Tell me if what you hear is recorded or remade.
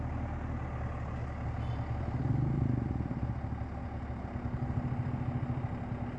recorded